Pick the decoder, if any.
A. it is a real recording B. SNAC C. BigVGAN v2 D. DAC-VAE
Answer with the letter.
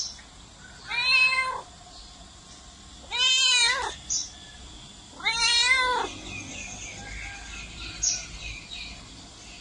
A